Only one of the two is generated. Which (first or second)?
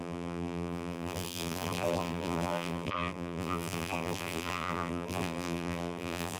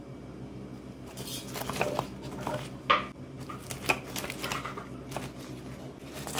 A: first